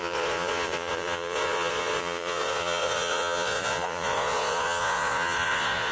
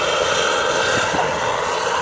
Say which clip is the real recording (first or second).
second